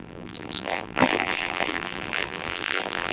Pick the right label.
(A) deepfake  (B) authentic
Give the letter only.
A